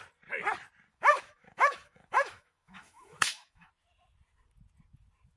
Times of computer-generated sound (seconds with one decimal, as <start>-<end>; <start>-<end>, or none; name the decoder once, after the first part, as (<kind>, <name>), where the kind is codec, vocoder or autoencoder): 0.9-3.7 (autoencoder, DAC-VAE)